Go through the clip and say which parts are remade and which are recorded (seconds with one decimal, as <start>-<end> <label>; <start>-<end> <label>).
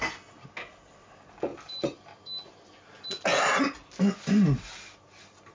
0.0-5.5 recorded